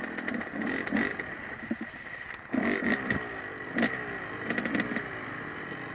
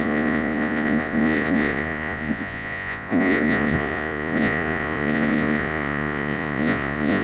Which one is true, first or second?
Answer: first